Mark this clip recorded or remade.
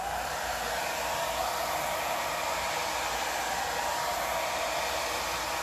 recorded